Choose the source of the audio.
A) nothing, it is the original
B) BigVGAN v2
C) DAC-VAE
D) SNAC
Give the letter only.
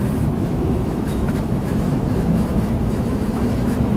C